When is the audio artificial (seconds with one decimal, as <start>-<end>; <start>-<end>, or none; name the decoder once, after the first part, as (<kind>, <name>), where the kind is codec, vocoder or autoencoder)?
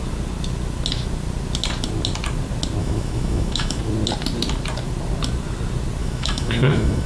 2.8-3.8 (autoencoder, DAC-VAE); 6.0-7.1